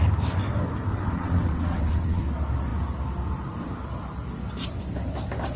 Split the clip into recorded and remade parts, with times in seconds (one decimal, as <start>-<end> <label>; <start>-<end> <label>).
0.0-0.9 recorded; 0.9-2.2 remade; 2.2-5.6 recorded